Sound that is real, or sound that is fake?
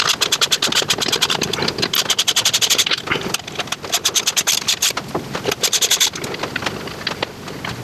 real